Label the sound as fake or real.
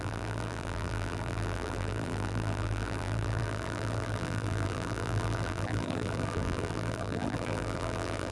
fake